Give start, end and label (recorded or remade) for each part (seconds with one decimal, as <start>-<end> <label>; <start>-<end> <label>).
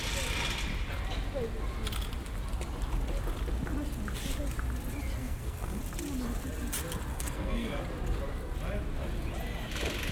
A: 0.0-5.2 recorded; 5.2-5.8 remade; 5.8-7.1 recorded; 7.1-7.8 remade; 7.8-10.1 recorded